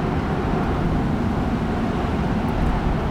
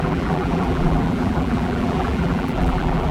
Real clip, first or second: first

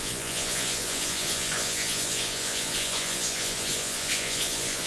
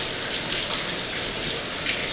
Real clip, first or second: second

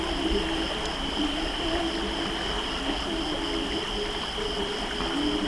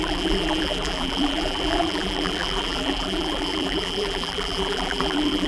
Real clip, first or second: first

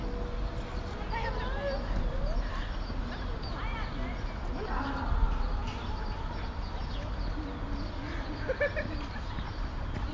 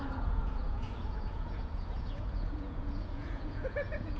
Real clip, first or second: first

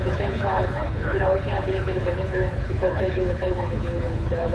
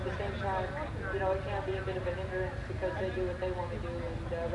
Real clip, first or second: second